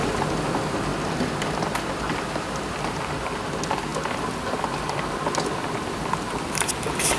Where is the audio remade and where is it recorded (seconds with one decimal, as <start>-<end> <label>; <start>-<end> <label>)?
0.0-3.9 recorded; 3.9-7.2 remade